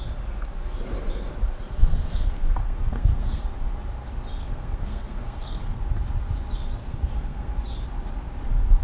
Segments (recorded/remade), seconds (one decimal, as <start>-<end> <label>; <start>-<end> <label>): 0.0-1.8 recorded; 1.8-3.4 remade; 3.4-4.4 recorded; 4.4-5.8 remade; 5.8-6.8 recorded; 6.8-7.6 remade; 7.6-8.8 recorded